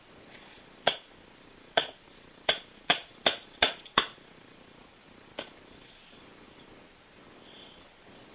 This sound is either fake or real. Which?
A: fake